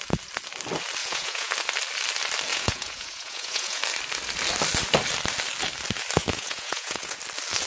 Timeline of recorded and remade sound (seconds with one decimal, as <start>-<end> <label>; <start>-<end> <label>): 0.0-1.0 recorded; 1.0-1.5 remade; 1.5-2.5 recorded; 2.5-3.8 remade; 3.8-6.2 recorded; 6.2-7.2 remade; 7.2-7.7 recorded